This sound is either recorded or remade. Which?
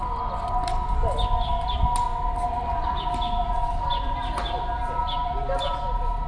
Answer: recorded